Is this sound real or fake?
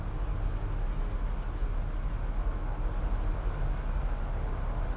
real